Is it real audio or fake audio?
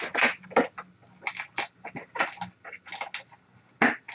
real